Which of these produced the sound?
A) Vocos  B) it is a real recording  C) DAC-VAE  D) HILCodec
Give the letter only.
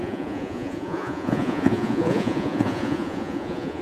A